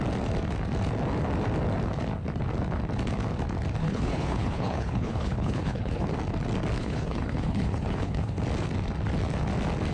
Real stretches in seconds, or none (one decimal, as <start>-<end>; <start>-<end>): 0.0-3.8; 6.1-6.8; 8.4-9.9